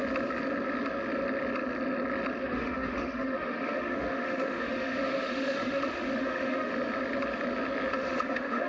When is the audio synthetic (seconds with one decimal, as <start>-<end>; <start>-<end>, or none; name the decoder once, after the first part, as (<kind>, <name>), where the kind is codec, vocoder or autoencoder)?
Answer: 2.4-6.7 (autoencoder, DAC-VAE); 7.9-8.7